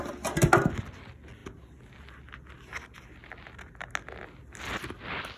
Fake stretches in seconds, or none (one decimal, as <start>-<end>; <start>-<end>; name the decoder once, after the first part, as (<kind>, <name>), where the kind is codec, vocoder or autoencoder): none